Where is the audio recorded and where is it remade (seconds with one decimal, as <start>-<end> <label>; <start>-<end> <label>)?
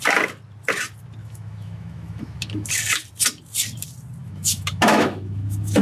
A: 0.0-1.2 recorded; 1.2-2.7 remade; 2.7-4.2 recorded; 4.2-5.8 remade